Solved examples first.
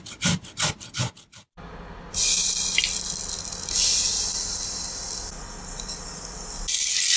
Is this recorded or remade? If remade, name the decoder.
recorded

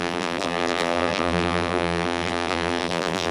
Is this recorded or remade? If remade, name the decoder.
remade, vocoder, BigVGAN v2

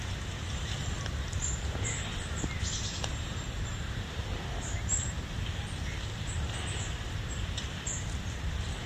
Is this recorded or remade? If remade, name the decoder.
remade, vocoder, BigVGAN v2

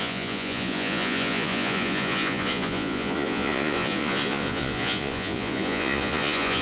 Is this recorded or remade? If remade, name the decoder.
remade, vocoder, Vocos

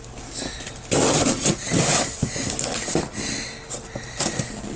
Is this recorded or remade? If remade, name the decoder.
recorded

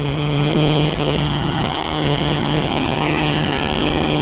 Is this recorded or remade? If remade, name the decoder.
remade, vocoder, HiFi-GAN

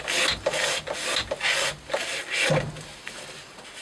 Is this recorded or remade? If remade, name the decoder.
recorded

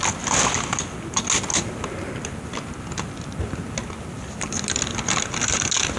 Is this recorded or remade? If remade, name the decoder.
recorded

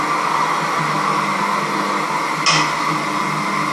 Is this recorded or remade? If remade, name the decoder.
recorded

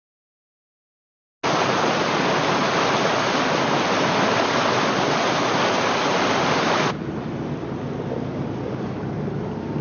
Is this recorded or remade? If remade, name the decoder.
recorded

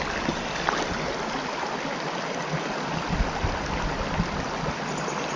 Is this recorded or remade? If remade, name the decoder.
recorded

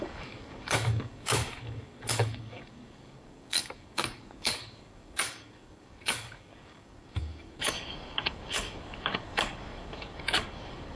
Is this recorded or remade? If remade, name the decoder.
remade, codec, DAC